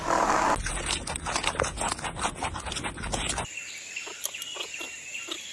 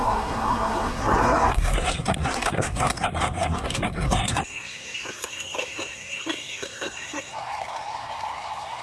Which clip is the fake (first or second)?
second